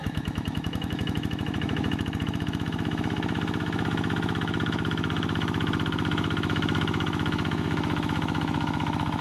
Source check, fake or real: fake